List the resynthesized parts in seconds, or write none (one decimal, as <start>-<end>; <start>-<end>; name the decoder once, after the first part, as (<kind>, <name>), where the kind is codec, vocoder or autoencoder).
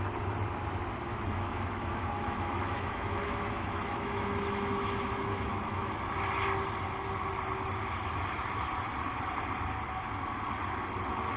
1.1-5.9 (autoencoder, DAC-VAE)